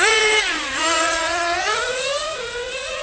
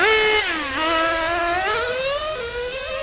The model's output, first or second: first